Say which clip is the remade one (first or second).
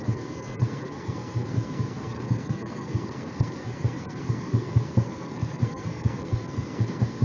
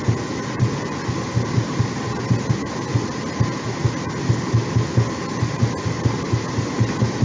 first